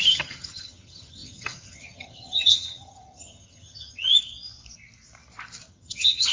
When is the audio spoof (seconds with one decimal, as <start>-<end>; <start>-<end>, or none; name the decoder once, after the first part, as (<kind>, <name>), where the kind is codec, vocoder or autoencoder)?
0.0-4.1 (vocoder, HiFi-GAN); 5.7-6.3